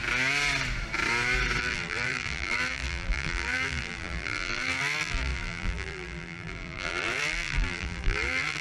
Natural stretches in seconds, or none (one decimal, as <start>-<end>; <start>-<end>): 0.0-1.6